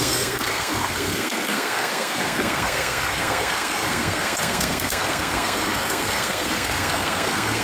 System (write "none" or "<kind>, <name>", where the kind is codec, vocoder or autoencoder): codec, SNAC